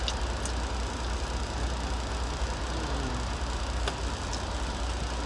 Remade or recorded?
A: recorded